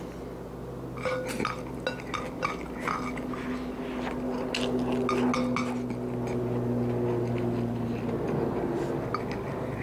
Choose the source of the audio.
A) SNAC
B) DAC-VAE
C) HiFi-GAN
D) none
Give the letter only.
D